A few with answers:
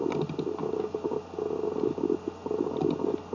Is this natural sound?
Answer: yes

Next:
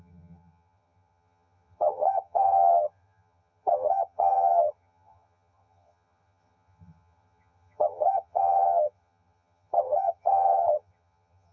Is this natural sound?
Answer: no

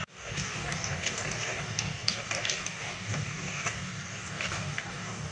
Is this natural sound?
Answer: no